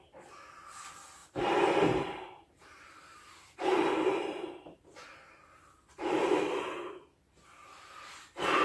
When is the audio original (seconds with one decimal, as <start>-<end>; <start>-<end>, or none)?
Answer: 0.0-1.2; 6.2-8.6